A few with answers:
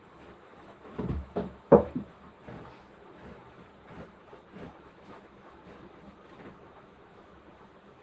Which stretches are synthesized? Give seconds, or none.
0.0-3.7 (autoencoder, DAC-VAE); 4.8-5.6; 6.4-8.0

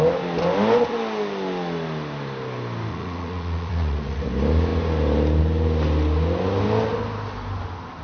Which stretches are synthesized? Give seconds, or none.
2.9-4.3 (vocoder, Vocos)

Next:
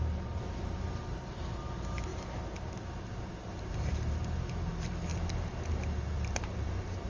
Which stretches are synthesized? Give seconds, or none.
0.0-2.1 (vocoder, BigVGAN v2); 3.1-7.1

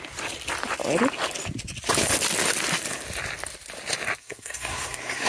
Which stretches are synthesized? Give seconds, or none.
4.2-5.3 (codec, SNAC)

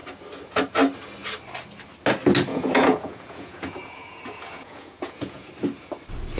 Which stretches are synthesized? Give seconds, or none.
2.5-5.5 (vocoder, Vocos)

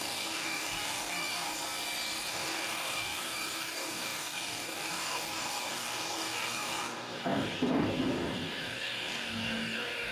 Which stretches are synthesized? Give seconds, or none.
0.0-1.5 (codec, DAC); 2.3-10.1